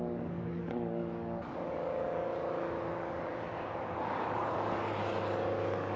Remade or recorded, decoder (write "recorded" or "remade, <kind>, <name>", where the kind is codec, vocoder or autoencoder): remade, codec, DAC